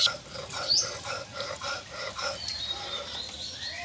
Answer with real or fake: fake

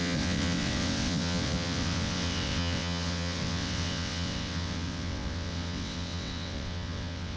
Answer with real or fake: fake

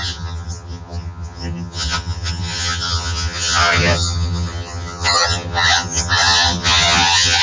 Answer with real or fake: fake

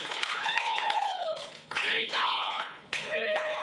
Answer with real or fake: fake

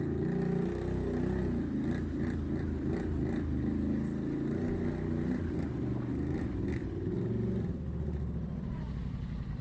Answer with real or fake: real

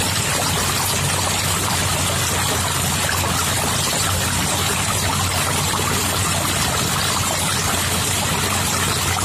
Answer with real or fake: real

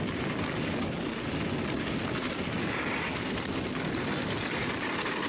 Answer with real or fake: real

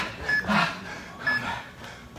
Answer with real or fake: real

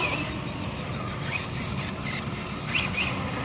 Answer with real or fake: real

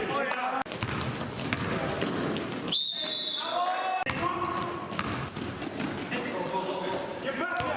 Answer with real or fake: real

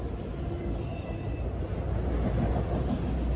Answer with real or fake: real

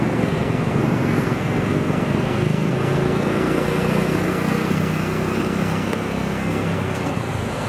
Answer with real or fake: fake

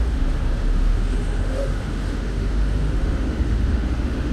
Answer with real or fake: fake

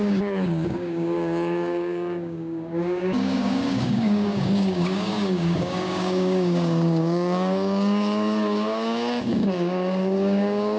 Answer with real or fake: fake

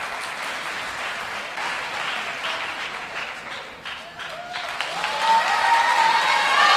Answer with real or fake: real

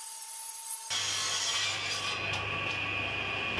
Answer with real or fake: real